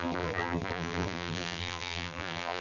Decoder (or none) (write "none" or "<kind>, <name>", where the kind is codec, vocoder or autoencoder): vocoder, BigVGAN v2